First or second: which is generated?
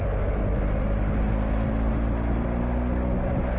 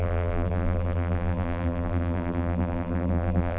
second